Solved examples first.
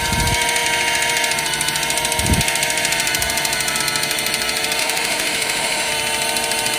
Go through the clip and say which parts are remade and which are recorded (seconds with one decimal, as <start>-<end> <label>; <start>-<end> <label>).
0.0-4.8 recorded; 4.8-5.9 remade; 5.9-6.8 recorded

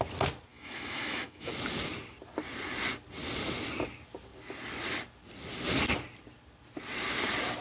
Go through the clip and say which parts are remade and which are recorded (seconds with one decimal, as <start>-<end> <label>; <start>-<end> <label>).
0.0-0.5 recorded; 0.5-1.5 remade; 1.5-7.6 recorded

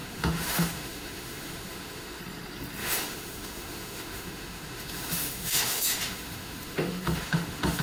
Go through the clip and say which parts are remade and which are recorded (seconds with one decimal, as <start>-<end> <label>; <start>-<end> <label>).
0.0-2.2 remade; 2.2-2.8 recorded; 2.8-7.8 remade

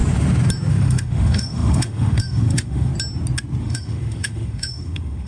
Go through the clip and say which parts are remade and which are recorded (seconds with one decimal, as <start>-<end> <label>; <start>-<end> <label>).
0.0-0.7 recorded; 0.7-2.9 remade; 2.9-3.6 recorded; 3.6-5.3 remade